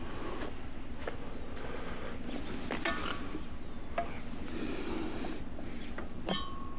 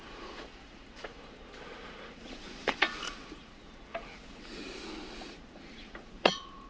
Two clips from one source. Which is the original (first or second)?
first